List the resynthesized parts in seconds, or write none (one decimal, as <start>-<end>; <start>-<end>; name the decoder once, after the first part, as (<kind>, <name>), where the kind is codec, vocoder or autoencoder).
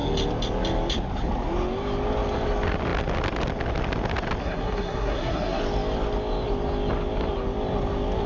4.4-5.6 (codec, SNAC)